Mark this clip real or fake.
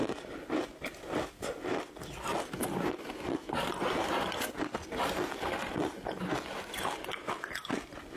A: real